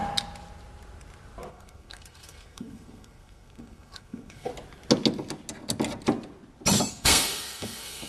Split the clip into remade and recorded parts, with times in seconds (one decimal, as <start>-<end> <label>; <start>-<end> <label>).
0.0-1.5 recorded; 1.5-4.5 remade; 4.5-6.9 recorded; 6.9-8.1 remade